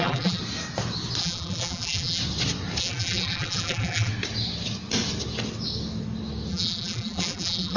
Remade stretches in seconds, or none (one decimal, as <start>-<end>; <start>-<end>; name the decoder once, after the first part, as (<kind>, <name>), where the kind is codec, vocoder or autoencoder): 0.0-0.4 (vocoder, BigVGAN v2); 1.2-2.2; 2.8-4.1; 6.5-7.8